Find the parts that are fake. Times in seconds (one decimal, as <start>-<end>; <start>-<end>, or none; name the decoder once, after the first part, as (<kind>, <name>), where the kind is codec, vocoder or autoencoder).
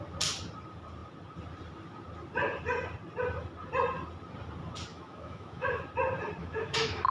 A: 4.9-5.8 (autoencoder, DAC-VAE); 6.4-7.1